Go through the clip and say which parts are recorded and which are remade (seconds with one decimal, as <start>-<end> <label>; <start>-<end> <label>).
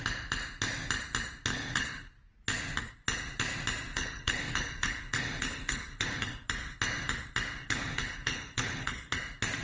0.0-1.5 recorded; 1.5-2.1 remade; 2.1-3.9 recorded; 3.9-6.5 remade; 6.5-7.6 recorded; 7.6-9.2 remade; 9.2-9.6 recorded